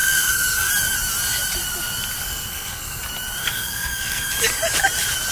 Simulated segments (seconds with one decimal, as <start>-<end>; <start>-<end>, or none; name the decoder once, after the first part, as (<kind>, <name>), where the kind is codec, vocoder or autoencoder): 0.0-0.7 (codec, SNAC); 2.2-3.0; 3.4-4.3